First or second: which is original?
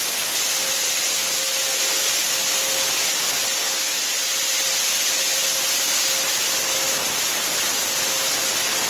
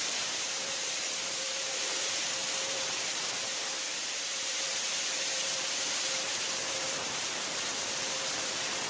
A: first